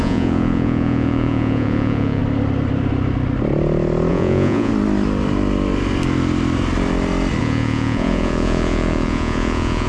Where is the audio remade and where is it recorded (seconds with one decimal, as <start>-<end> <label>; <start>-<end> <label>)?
0.0-2.2 remade; 2.2-4.1 recorded; 4.1-4.7 remade; 4.7-7.4 recorded; 7.4-9.9 remade